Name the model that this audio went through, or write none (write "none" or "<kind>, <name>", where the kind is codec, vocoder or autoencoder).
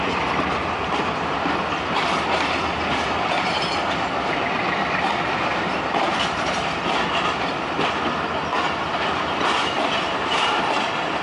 vocoder, BigVGAN v2